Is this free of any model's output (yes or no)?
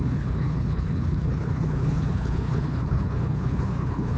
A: no